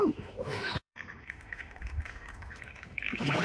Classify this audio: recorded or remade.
remade